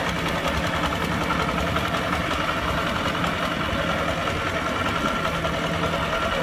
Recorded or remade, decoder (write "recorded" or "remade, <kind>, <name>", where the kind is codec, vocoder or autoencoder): recorded